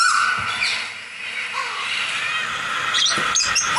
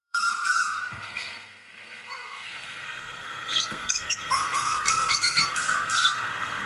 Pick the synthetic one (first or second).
second